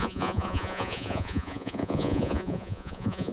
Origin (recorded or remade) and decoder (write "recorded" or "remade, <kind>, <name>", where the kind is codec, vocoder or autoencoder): remade, vocoder, Vocos